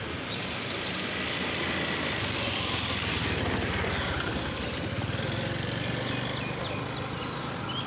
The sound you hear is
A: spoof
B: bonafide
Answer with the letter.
A